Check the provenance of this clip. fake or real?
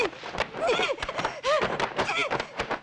real